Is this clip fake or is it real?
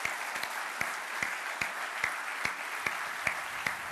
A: real